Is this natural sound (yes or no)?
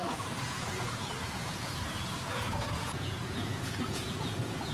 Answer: no